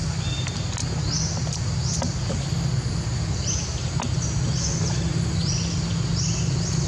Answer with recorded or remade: recorded